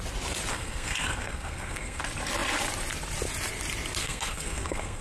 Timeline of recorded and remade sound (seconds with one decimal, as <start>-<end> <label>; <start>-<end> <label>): 0.0-0.5 recorded; 0.5-2.0 remade; 2.0-4.0 recorded; 4.0-5.0 remade